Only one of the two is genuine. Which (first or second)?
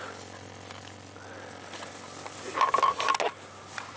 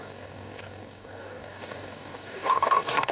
first